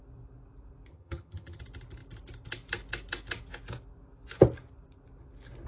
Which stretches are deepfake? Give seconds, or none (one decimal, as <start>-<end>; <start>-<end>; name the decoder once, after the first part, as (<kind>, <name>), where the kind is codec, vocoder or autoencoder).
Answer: 0.9-1.6 (vocoder, HiFi-GAN)